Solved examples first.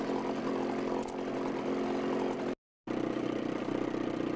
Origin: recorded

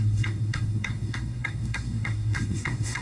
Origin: remade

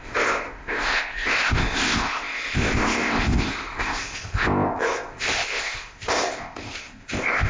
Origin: remade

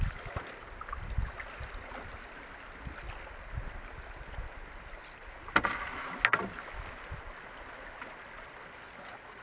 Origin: recorded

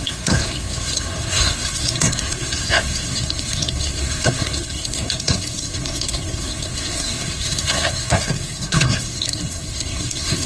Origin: remade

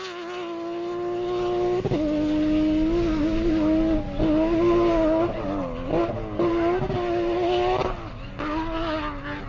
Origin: recorded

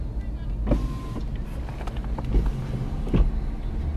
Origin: recorded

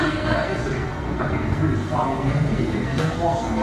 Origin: remade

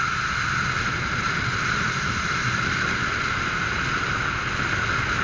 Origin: recorded